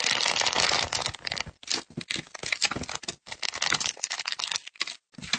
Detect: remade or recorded recorded